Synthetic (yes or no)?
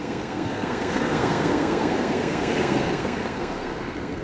yes